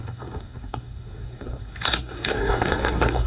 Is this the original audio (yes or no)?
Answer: no